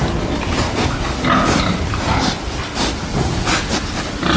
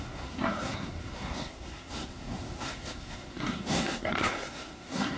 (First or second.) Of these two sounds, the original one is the first